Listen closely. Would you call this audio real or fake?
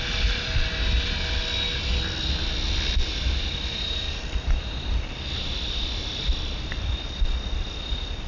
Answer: real